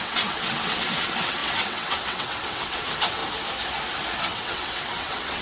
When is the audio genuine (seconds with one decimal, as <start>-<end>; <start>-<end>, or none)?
3.2-4.2

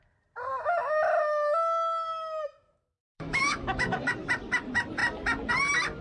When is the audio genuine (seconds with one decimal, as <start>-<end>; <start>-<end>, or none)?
0.0-0.5; 4.1-6.0